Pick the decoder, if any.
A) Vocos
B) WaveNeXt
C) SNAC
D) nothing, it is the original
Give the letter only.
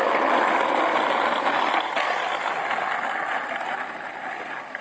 D